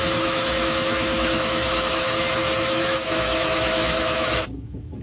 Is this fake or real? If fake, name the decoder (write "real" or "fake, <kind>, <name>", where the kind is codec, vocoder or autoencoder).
fake, autoencoder, DAC-VAE